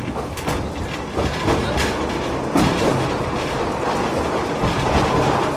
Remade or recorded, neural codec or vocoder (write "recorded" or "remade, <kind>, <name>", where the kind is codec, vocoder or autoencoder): recorded